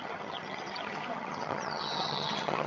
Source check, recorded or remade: remade